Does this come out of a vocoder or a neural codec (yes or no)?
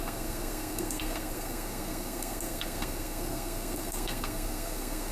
yes